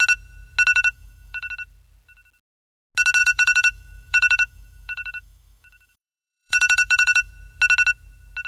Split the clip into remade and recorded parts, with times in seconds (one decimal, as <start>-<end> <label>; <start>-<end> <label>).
0.0-0.7 recorded; 0.7-1.5 remade; 1.5-3.2 recorded; 3.2-7.3 remade; 7.3-8.5 recorded